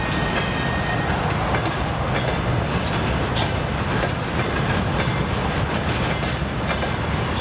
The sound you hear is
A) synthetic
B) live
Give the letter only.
B